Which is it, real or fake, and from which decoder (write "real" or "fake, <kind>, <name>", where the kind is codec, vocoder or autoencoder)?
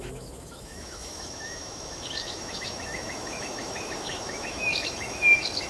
fake, autoencoder, DAC-VAE